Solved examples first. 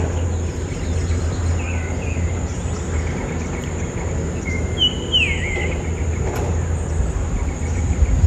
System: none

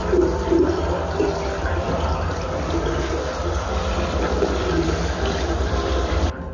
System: vocoder, BigVGAN v2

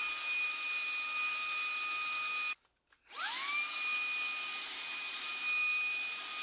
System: none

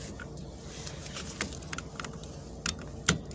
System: none